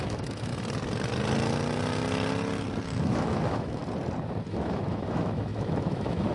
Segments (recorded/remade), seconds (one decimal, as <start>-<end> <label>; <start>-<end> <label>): 0.0-0.5 remade; 0.5-3.0 recorded; 3.0-3.8 remade; 3.8-4.5 recorded; 4.5-6.3 remade